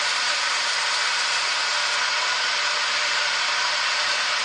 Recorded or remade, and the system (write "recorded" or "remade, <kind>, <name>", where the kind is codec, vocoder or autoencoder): recorded